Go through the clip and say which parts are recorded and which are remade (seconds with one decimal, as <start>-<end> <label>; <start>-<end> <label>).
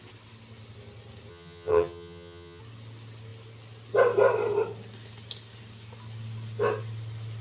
0.0-1.3 recorded; 1.3-2.6 remade; 2.6-7.4 recorded